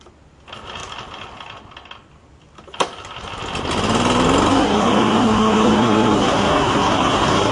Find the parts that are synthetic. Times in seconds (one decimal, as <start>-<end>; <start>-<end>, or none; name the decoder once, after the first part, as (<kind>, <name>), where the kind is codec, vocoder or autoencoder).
4.5-7.5 (codec, SNAC)

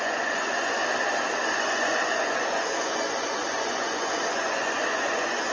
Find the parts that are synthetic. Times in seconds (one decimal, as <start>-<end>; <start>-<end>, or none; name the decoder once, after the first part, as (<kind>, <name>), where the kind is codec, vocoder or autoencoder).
0.0-0.8 (vocoder, Vocos); 1.5-5.5

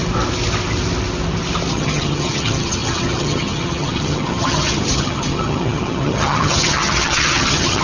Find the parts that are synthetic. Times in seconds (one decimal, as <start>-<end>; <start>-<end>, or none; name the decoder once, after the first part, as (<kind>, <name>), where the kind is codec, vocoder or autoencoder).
1.7-7.8 (vocoder, HiFi-GAN)